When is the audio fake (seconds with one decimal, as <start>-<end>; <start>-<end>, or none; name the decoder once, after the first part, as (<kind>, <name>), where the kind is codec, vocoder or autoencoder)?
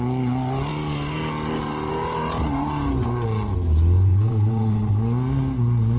4.1-4.9 (vocoder, WaveNeXt)